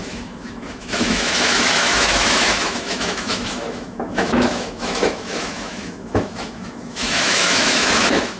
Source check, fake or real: fake